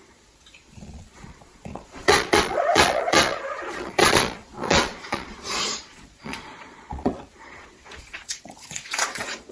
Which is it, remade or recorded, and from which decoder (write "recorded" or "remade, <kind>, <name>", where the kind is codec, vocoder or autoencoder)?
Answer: remade, vocoder, Vocos